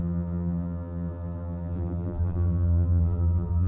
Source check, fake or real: fake